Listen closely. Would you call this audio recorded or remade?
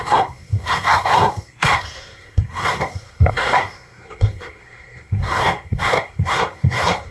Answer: remade